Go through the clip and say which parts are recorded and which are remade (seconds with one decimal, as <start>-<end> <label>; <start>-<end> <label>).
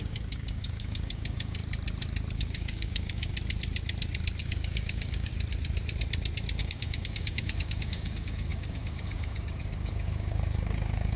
0.0-1.6 remade; 1.6-2.3 recorded; 2.3-3.3 remade; 3.3-4.4 recorded; 4.4-5.3 remade; 5.3-6.6 recorded; 6.6-11.2 remade